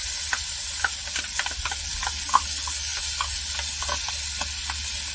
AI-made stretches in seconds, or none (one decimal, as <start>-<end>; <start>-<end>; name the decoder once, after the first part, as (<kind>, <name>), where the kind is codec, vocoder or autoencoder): none